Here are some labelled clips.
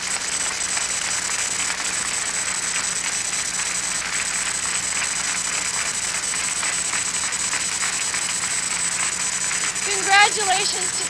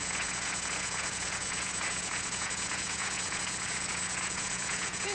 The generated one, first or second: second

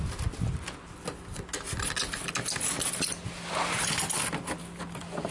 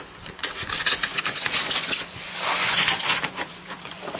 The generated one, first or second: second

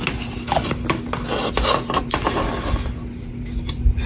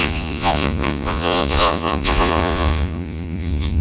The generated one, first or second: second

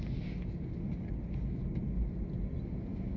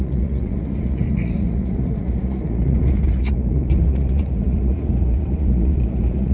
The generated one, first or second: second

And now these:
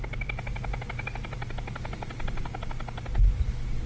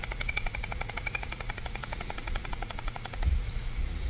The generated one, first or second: second